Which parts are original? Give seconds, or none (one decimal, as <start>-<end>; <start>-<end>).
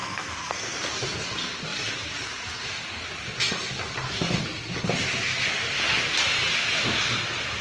0.9-7.6